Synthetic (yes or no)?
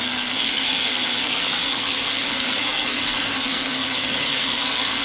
yes